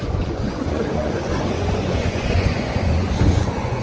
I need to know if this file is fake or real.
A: fake